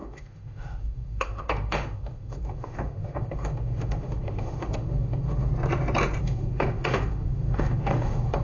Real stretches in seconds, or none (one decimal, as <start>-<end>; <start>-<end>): 5.5-6.2